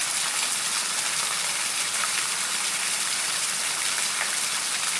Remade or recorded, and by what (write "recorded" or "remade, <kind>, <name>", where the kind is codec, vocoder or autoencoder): recorded